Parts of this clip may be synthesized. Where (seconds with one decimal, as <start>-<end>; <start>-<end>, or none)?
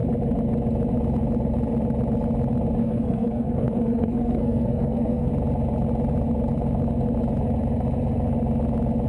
2.8-5.3